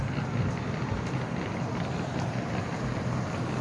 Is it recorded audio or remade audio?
recorded